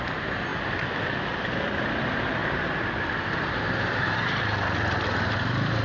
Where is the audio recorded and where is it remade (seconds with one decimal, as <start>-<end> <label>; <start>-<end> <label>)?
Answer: 0.0-5.8 recorded